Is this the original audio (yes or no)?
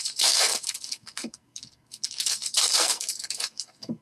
no